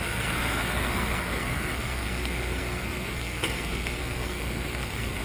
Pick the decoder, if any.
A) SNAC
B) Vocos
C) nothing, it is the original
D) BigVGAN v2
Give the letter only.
A